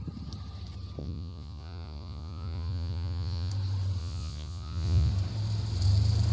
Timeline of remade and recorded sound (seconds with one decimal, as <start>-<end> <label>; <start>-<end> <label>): 0.0-1.0 recorded; 1.0-3.5 remade; 3.5-4.0 recorded; 4.0-5.1 remade; 5.1-6.3 recorded

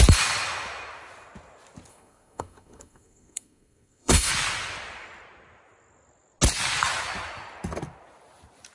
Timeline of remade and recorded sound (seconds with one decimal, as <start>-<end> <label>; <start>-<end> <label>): 0.0-1.9 recorded; 1.9-4.3 remade; 4.3-8.7 recorded

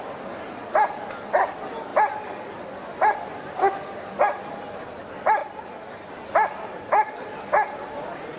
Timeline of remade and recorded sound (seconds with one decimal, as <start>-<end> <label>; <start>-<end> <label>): 0.0-8.4 recorded

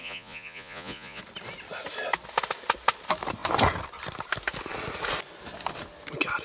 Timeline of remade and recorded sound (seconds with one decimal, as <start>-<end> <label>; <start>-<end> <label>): 0.0-1.2 remade; 1.2-6.4 recorded

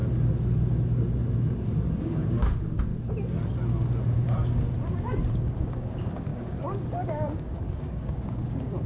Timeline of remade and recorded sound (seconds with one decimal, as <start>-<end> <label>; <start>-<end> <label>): 0.0-2.0 recorded; 2.0-2.9 remade; 2.9-5.3 recorded; 5.3-8.9 remade

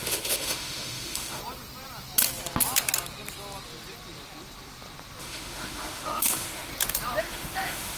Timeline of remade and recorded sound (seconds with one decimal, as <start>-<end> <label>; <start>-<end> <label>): 0.0-1.4 remade; 1.4-5.2 recorded; 5.2-6.7 remade; 6.7-7.2 recorded; 7.2-8.0 remade

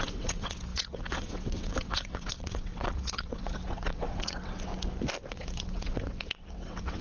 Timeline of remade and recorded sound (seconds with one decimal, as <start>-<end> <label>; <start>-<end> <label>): 0.0-4.7 remade; 4.7-5.3 recorded; 5.3-7.0 remade

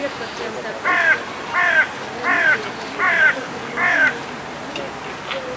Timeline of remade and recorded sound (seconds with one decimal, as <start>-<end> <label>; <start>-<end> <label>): 0.0-3.4 recorded; 3.4-4.0 remade; 4.0-5.6 recorded